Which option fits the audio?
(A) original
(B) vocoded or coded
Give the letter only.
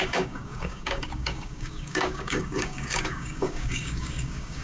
B